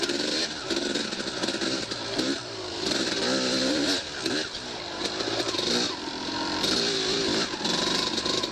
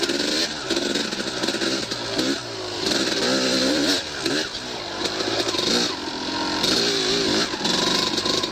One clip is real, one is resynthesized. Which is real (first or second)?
second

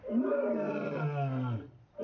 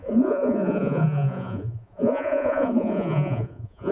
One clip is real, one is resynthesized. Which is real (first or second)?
first